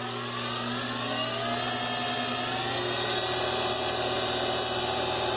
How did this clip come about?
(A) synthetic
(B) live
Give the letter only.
B